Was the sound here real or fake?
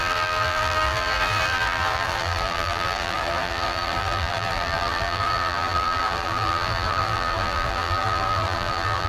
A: fake